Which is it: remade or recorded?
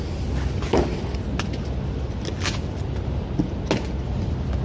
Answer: recorded